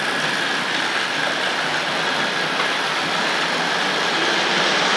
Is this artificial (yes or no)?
no